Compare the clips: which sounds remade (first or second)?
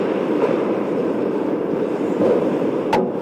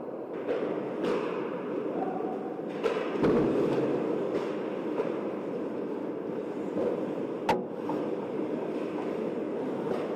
first